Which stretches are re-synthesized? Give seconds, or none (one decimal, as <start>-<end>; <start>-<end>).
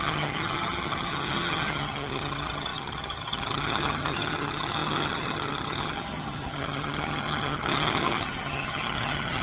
0.0-9.4